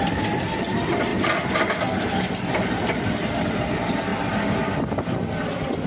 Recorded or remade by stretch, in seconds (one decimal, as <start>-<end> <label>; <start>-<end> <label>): 0.0-5.9 recorded